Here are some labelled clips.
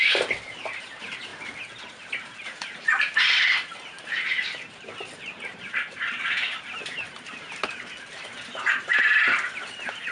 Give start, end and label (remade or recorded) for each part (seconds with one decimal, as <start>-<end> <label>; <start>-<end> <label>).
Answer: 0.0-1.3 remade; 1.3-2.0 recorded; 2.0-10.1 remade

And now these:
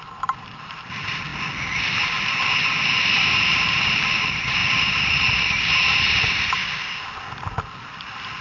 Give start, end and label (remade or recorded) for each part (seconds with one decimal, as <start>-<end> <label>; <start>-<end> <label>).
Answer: 0.0-1.3 remade; 1.3-2.0 recorded; 2.0-4.6 remade; 4.6-5.1 recorded; 5.1-6.6 remade; 6.6-8.4 recorded

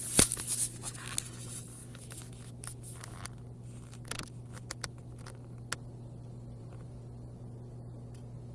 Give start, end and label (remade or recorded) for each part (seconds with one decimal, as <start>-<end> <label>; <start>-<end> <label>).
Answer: 0.0-8.5 recorded

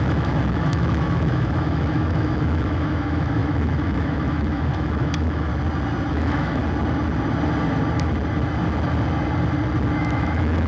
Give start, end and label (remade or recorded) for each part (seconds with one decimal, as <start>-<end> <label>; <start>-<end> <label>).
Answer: 0.0-5.5 remade; 5.5-6.1 recorded; 6.1-6.6 remade; 6.6-10.0 recorded; 10.0-10.7 remade

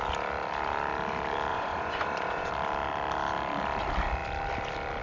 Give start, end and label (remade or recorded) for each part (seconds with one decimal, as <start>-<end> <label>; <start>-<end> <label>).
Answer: 0.0-1.5 recorded; 1.5-2.5 remade; 2.5-5.0 recorded